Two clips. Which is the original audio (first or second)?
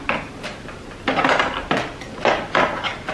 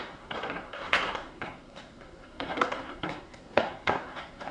first